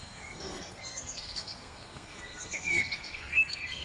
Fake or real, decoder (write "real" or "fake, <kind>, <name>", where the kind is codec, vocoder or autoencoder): fake, codec, SNAC